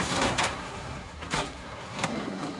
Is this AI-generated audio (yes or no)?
yes